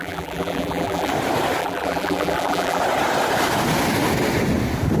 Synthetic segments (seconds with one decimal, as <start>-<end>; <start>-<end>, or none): 0.0-1.1; 1.6-2.8